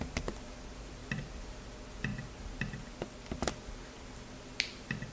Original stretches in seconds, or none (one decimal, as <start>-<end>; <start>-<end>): 0.0-5.1